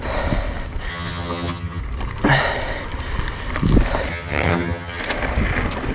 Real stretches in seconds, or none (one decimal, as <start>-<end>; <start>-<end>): 0.0-0.9; 1.8-4.1; 5.0-5.9